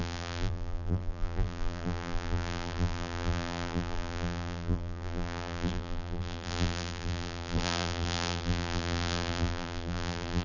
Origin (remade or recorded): remade